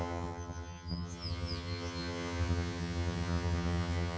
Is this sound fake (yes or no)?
yes